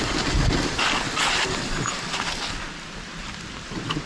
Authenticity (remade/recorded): recorded